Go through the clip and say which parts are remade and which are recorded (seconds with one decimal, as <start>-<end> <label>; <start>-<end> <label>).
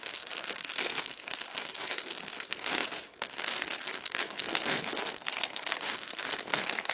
0.0-6.9 remade